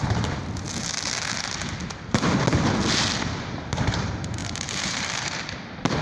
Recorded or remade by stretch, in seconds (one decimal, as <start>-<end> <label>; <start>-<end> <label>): 0.0-0.4 remade; 0.4-3.4 recorded; 3.4-6.0 remade